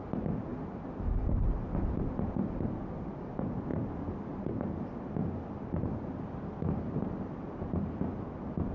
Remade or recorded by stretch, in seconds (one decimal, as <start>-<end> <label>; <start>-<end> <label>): 0.0-8.7 recorded